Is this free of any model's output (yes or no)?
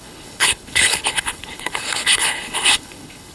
no